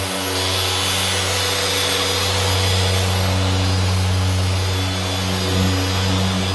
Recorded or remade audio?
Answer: recorded